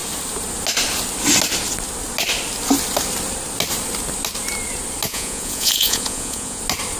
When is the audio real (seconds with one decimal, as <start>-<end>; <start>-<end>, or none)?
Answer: 0.0-5.1; 6.6-7.0